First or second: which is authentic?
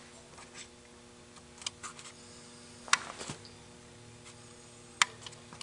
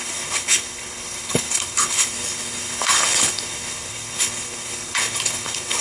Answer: first